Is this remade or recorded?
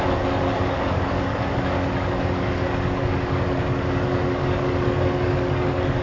remade